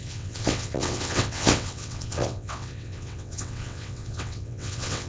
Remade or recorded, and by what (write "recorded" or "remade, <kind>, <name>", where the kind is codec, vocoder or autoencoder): remade, vocoder, WaveNeXt